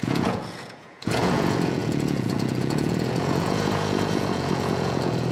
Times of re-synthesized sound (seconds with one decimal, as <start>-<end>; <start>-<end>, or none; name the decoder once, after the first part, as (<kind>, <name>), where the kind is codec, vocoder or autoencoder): 0.0-5.3 (vocoder, Vocos)